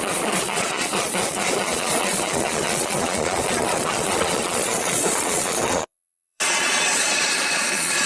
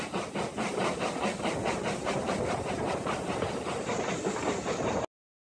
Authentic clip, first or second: second